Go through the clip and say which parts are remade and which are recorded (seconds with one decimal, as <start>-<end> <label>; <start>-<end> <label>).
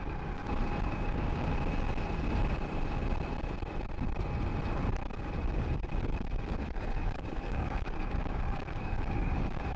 0.0-0.4 remade; 0.4-0.9 recorded; 0.9-1.5 remade; 1.5-6.0 recorded; 6.0-9.8 remade